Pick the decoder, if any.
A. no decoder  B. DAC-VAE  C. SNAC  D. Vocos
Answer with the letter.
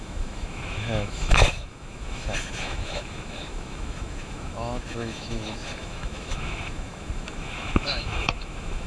B